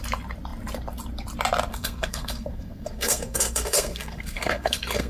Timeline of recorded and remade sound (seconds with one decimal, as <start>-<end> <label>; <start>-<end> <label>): 0.0-1.7 recorded; 1.7-5.1 remade